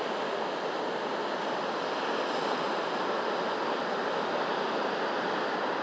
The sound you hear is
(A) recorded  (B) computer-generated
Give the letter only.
A